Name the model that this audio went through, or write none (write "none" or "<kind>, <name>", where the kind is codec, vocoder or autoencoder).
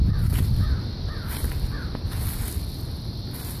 none